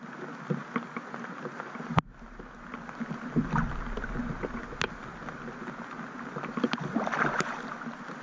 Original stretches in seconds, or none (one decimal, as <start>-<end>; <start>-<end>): 0.0-8.2